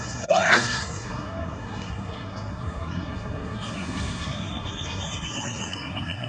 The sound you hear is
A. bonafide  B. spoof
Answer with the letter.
B